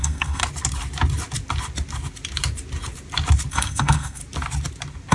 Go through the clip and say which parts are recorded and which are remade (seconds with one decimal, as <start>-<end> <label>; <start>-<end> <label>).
0.0-0.4 remade; 0.4-3.5 recorded; 3.5-4.2 remade; 4.2-5.1 recorded